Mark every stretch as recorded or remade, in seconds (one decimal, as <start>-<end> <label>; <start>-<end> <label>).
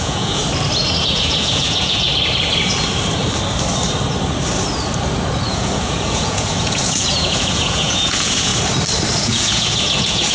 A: 0.0-0.4 remade; 0.4-1.0 recorded; 1.0-2.1 remade; 2.1-5.5 recorded; 5.5-8.5 remade; 8.5-9.2 recorded; 9.2-10.3 remade